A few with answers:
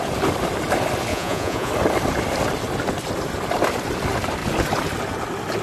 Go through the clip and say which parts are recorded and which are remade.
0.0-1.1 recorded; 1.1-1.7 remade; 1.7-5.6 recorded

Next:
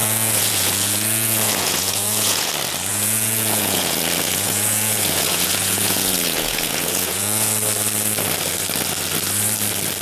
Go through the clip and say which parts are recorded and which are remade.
0.0-2.5 remade; 2.5-2.9 recorded; 2.9-7.6 remade; 7.6-10.0 recorded

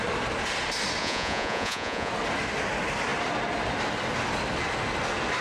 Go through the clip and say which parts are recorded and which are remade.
0.0-1.0 recorded; 1.0-2.1 remade; 2.1-5.4 recorded

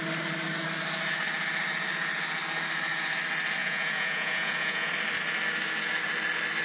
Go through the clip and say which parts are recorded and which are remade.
0.0-3.6 recorded; 3.6-4.9 remade; 4.9-6.6 recorded

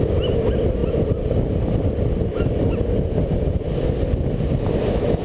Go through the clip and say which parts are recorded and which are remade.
0.0-5.2 recorded

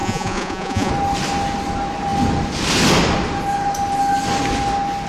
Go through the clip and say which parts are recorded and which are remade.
0.0-0.9 remade; 0.9-5.1 recorded

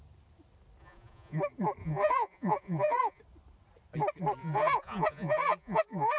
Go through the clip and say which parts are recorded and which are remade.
0.0-0.8 recorded; 0.8-1.4 remade; 1.4-1.8 recorded; 1.8-3.2 remade; 3.2-4.4 recorded; 4.4-6.2 remade